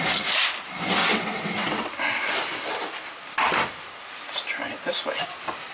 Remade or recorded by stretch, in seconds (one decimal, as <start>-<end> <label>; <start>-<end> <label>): 0.0-1.0 recorded; 1.0-1.9 remade; 1.9-5.7 recorded

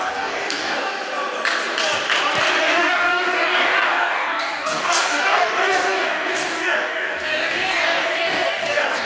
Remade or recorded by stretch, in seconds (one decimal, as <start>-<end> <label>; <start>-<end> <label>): 0.0-0.9 remade; 0.9-2.6 recorded; 2.6-9.1 remade

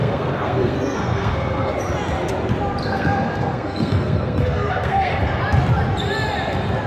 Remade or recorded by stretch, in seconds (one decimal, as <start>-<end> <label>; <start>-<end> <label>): 0.0-1.7 remade; 1.7-2.8 recorded; 2.8-5.4 remade; 5.4-6.9 recorded

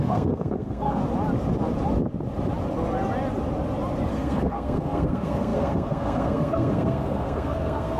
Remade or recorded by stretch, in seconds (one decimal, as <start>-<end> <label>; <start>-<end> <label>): 0.0-1.0 remade; 1.0-4.1 recorded; 4.1-8.0 remade

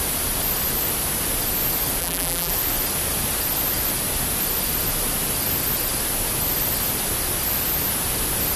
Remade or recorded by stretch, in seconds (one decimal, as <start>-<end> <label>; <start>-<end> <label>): 0.0-2.0 recorded; 2.0-2.5 remade; 2.5-8.6 recorded

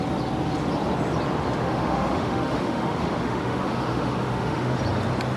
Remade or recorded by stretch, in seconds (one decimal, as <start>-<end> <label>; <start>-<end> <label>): 0.0-1.6 recorded; 1.6-4.8 remade; 4.8-5.4 recorded

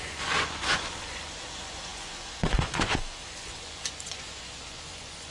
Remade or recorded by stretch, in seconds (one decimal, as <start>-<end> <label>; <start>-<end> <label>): 0.0-5.3 remade

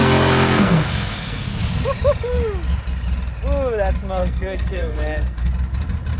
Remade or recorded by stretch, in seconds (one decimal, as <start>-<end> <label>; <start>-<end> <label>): 0.0-1.6 remade; 1.6-4.2 recorded; 4.2-5.5 remade; 5.5-6.2 recorded